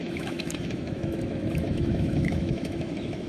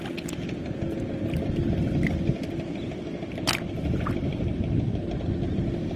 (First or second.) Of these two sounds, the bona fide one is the second